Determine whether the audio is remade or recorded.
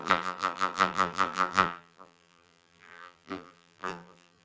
remade